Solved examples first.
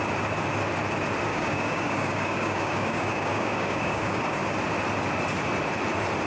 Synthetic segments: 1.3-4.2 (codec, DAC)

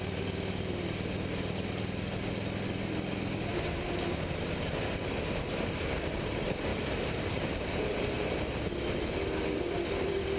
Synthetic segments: 6.7-8.4 (vocoder, BigVGAN v2)

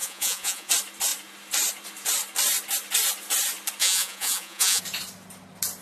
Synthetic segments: 0.0-0.7 (vocoder, Vocos); 3.8-4.8

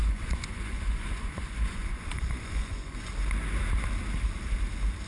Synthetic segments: 0.0-3.1 (vocoder, Vocos)

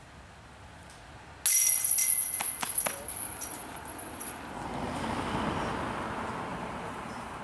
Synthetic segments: 6.5-7.4 (vocoder, BigVGAN v2)

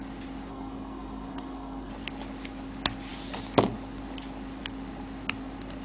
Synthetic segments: 0.5-1.9 (codec, SNAC)

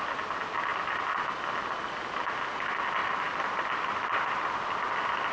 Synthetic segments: none